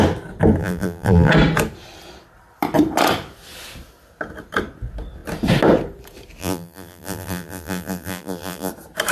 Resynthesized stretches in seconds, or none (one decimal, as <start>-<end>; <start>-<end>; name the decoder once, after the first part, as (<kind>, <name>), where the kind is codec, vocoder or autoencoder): 0.6-1.3 (vocoder, BigVGAN v2); 6.4-8.7